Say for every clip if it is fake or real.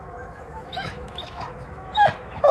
fake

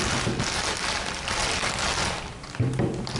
real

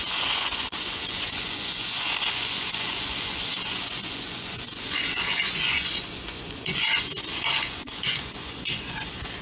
fake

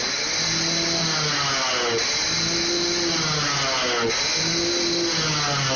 real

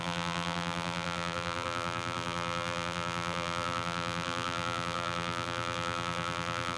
fake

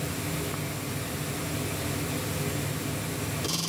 real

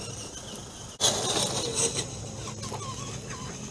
real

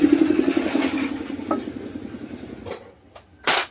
fake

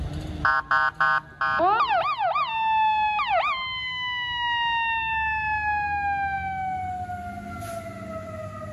real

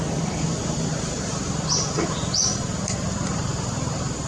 fake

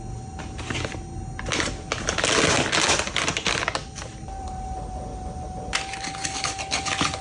real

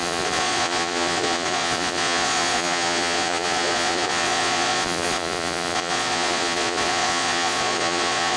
fake